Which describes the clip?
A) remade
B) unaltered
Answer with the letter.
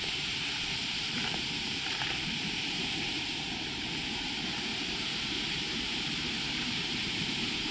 A